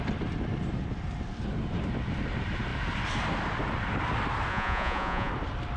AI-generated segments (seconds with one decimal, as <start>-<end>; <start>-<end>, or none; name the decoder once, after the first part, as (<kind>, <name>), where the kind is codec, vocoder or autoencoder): 4.5-5.3 (vocoder, Vocos)